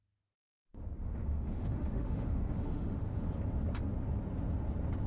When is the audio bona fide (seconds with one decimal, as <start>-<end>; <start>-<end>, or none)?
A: 0.0-0.7; 3.2-5.1